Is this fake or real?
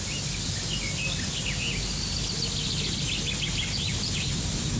real